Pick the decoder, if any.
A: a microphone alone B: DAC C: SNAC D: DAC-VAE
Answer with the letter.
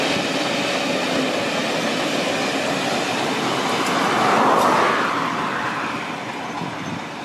A